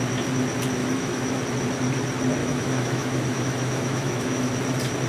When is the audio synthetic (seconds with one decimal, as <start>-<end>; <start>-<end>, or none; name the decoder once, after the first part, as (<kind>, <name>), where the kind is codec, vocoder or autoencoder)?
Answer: 0.8-1.4 (autoencoder, DAC-VAE); 2.4-4.5